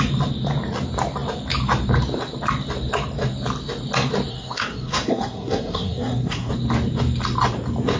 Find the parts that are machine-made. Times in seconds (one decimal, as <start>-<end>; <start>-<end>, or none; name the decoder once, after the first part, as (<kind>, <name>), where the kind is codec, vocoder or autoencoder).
4.3-6.5 (codec, SNAC)